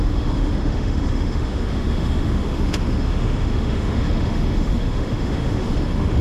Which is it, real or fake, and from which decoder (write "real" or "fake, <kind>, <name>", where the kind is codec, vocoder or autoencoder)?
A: fake, autoencoder, DAC-VAE